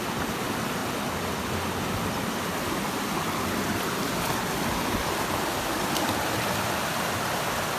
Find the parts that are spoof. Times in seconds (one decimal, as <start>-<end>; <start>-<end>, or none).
none